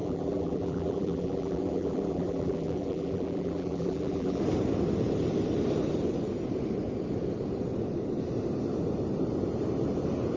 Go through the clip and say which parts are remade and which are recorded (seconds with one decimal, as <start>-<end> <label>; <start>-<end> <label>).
0.0-4.4 remade; 4.4-10.4 recorded